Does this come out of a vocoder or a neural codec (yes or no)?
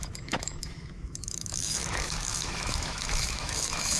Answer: yes